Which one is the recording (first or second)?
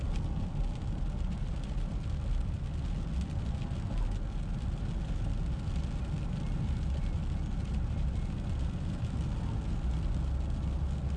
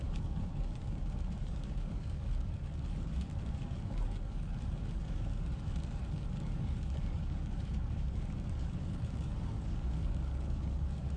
first